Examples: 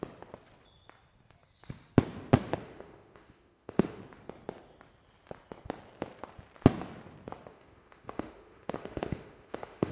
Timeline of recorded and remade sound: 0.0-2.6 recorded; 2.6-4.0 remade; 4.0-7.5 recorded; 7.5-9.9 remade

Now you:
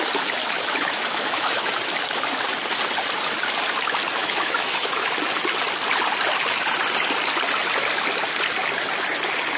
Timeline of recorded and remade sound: 0.0-0.4 recorded; 0.4-1.7 remade; 1.7-4.2 recorded; 4.2-5.1 remade; 5.1-9.6 recorded

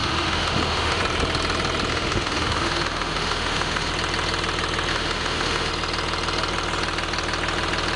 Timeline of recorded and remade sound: 0.0-1.0 remade; 1.0-1.9 recorded; 1.9-3.9 remade; 3.9-4.9 recorded; 4.9-5.7 remade; 5.7-8.0 recorded

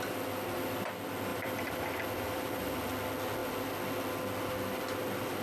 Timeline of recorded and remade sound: 0.0-1.3 recorded; 1.3-2.9 remade; 2.9-5.4 recorded

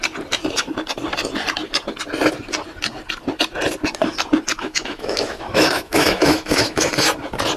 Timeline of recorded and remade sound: 0.0-4.5 recorded; 4.5-6.9 remade; 6.9-7.6 recorded

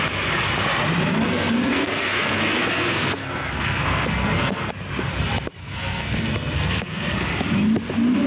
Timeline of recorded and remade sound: 0.0-1.3 recorded; 1.3-4.7 remade; 4.7-5.6 recorded; 5.6-7.3 remade; 7.3-8.3 recorded

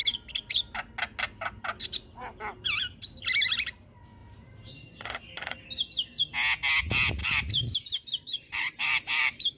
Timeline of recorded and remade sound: 0.0-4.2 recorded; 4.2-5.0 remade; 5.0-7.2 recorded; 7.2-9.6 remade

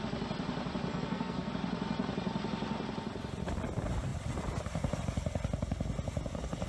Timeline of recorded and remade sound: 0.0-0.9 recorded; 0.9-1.5 remade; 1.5-6.7 recorded